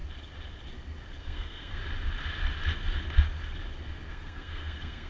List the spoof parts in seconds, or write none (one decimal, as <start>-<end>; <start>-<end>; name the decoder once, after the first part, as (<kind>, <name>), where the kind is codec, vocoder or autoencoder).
1.2-1.8 (codec, SNAC); 4.1-5.1